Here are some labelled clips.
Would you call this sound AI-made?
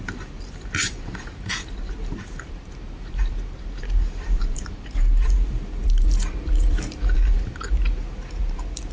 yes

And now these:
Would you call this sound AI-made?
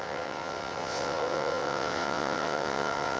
yes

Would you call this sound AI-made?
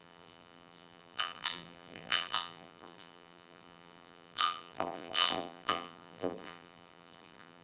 yes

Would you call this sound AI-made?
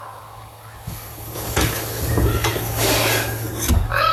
yes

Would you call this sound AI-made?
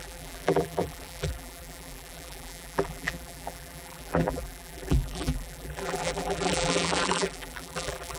yes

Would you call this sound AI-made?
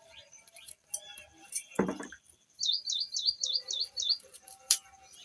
yes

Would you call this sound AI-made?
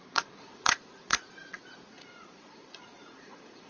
yes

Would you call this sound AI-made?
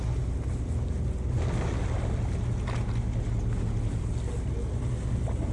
no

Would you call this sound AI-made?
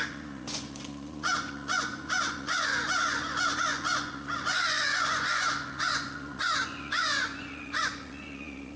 yes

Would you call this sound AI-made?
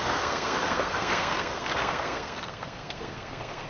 yes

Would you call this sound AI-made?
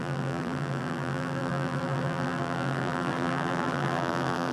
yes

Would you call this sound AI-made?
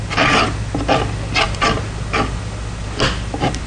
no